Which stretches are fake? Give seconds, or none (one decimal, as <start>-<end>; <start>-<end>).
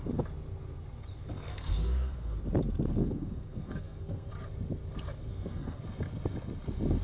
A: 1.5-2.4; 3.0-4.3; 5.3-5.8